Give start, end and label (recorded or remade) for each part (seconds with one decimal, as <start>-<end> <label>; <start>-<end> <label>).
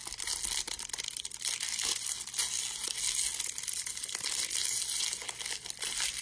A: 0.0-6.2 recorded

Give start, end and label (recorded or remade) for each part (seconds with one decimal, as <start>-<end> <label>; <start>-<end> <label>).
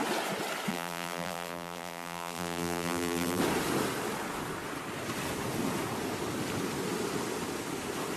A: 0.0-0.7 recorded; 0.7-3.4 remade; 3.4-8.2 recorded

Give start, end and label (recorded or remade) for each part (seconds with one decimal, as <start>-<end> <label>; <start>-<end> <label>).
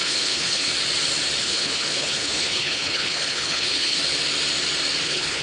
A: 0.0-0.7 remade; 0.7-1.4 recorded; 1.4-4.0 remade; 4.0-5.0 recorded; 5.0-5.4 remade